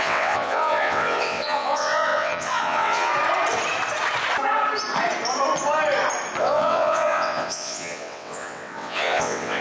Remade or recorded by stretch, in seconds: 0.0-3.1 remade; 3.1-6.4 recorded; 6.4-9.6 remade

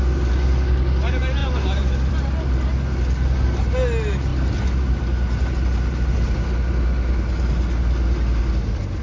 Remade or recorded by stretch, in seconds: 0.0-9.0 recorded

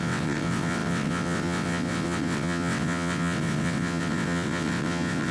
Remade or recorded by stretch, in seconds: 0.0-5.3 remade

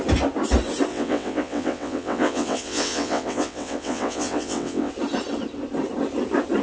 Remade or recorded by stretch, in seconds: 0.0-0.9 recorded; 0.9-4.9 remade; 4.9-6.6 recorded

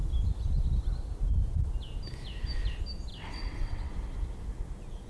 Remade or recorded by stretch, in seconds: 0.0-3.1 recorded; 3.1-3.9 remade; 3.9-5.1 recorded

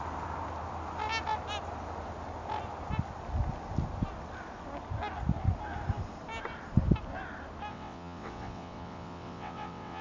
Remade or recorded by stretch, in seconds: 0.0-7.7 recorded; 7.7-10.0 remade

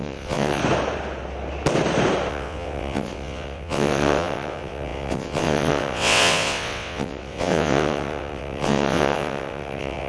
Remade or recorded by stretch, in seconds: 0.0-0.6 remade; 0.6-2.3 recorded; 2.3-10.1 remade

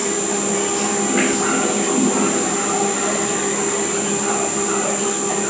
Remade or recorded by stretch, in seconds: 0.0-5.5 recorded